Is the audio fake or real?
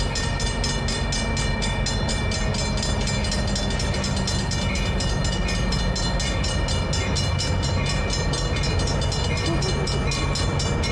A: real